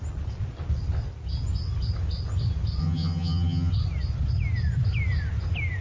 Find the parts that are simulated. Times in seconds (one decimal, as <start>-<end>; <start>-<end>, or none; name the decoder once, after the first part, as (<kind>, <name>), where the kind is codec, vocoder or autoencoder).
2.8-3.7 (vocoder, HiFi-GAN)